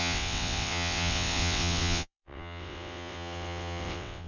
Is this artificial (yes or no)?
yes